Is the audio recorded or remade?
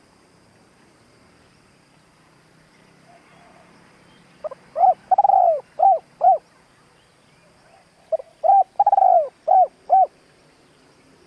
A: remade